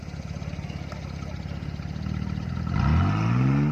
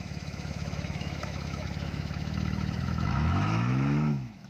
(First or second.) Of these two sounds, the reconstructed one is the second